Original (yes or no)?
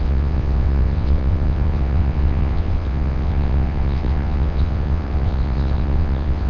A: no